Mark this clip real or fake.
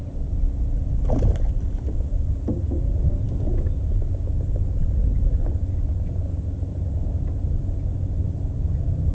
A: real